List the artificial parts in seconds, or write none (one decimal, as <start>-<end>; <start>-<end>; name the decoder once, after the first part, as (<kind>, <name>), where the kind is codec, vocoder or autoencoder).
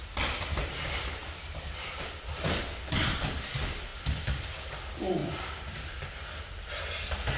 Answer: 1.2-1.9 (vocoder, BigVGAN v2); 3.9-4.5; 5.2-5.8